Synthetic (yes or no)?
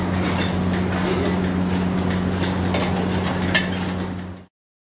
no